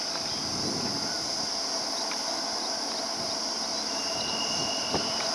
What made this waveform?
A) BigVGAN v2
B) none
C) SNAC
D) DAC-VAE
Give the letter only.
B